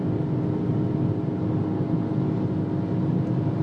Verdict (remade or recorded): recorded